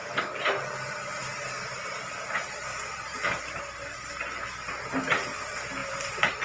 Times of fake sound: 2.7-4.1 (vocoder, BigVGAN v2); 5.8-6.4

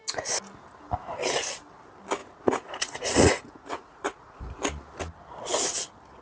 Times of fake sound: 2.2-4.6 (vocoder, Vocos)

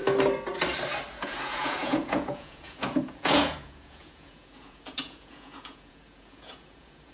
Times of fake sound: 1.1-7.1 (vocoder, Vocos)

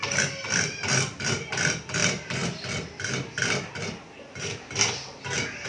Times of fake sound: none

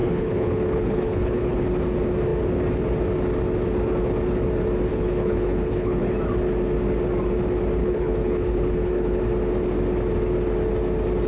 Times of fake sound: 0.0-1.6 (codec, HILCodec); 4.9-6.0; 7.8-9.2

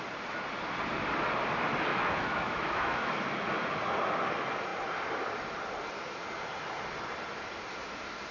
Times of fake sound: 1.9-3.1 (autoencoder, DAC-VAE)

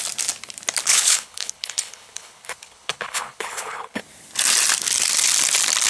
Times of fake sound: 0.9-4.0 (codec, HILCodec)